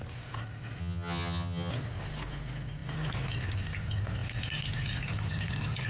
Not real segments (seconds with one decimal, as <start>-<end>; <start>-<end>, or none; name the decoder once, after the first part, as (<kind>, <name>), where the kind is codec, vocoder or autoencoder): 0.8-1.7 (vocoder, HiFi-GAN)